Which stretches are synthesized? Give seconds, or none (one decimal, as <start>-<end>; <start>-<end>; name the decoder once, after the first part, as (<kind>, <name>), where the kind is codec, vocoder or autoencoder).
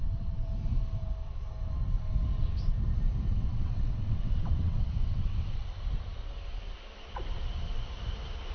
0.0-0.5 (vocoder, WaveNeXt); 3.3-5.8